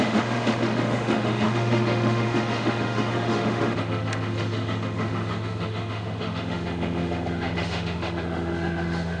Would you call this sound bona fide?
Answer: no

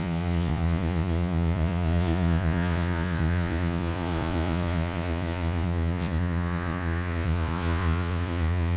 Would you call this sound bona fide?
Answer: no